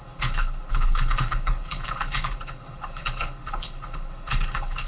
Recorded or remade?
remade